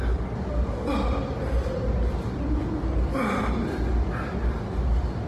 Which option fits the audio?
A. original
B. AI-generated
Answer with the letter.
A